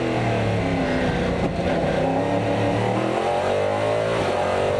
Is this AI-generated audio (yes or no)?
no